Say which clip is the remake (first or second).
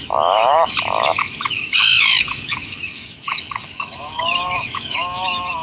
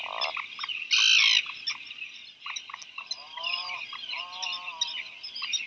first